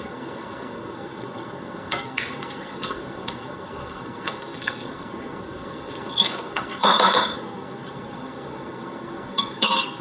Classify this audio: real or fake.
fake